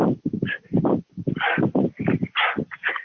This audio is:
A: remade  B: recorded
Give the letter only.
B